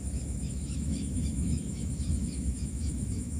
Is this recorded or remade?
remade